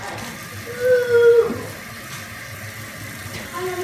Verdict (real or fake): real